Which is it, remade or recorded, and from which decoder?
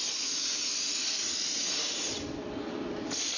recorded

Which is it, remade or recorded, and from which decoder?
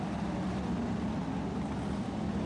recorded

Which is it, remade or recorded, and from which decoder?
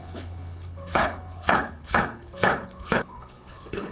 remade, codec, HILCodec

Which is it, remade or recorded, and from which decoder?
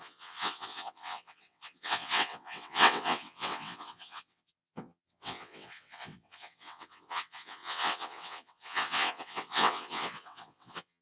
remade, vocoder, WaveNeXt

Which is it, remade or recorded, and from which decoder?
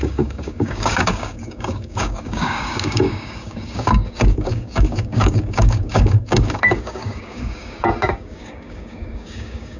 remade, codec, DAC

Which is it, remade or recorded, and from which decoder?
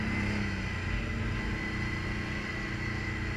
recorded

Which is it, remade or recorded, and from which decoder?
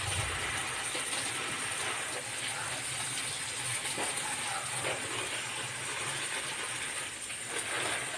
recorded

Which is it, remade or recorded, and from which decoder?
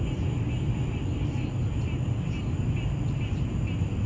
recorded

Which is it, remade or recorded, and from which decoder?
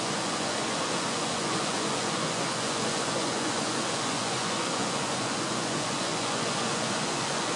remade, vocoder, Vocos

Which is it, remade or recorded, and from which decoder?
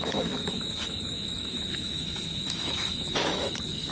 remade, autoencoder, DAC-VAE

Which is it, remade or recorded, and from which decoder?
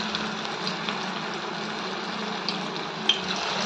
recorded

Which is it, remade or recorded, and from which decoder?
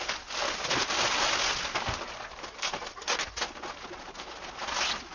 recorded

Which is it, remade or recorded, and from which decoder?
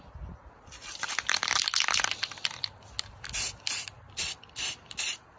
recorded